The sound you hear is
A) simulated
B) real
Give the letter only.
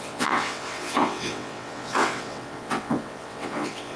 A